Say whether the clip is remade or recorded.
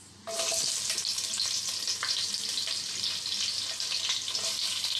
recorded